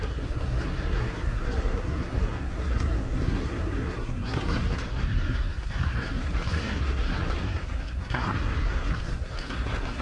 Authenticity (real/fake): fake